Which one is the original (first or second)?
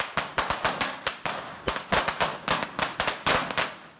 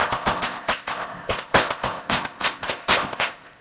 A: first